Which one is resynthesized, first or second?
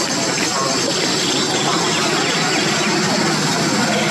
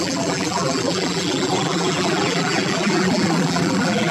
second